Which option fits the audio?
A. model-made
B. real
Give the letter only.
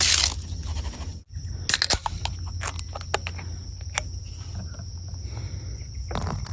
B